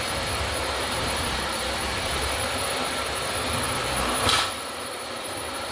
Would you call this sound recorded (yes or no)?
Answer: no